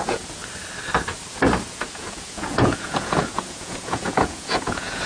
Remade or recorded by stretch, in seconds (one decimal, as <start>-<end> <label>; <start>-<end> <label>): 0.0-0.4 remade; 0.4-1.7 recorded; 1.7-5.1 remade